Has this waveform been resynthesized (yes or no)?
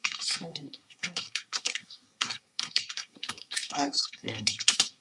yes